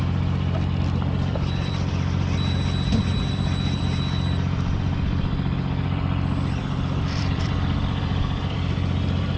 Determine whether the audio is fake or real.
fake